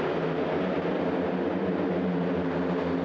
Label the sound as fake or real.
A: real